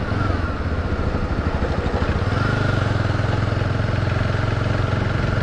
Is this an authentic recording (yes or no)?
yes